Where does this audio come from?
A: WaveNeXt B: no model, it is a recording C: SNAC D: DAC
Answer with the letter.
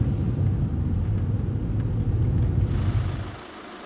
B